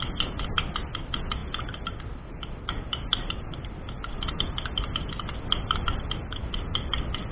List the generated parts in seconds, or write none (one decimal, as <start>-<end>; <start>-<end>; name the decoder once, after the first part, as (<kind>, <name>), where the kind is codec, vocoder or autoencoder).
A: none